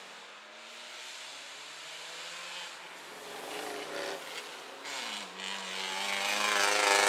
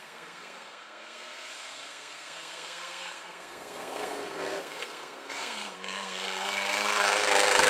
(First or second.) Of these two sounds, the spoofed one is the second